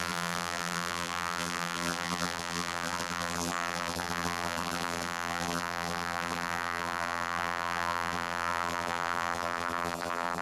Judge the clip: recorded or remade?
remade